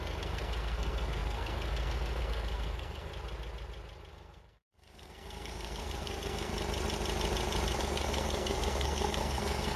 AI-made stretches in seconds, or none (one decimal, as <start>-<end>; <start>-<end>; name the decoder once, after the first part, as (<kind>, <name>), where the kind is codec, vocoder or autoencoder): 0.0-3.1 (codec, SNAC); 4.1-6.5; 7.8-9.8